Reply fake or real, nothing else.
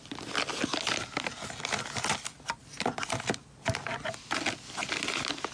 real